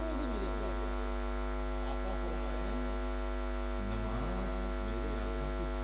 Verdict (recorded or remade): recorded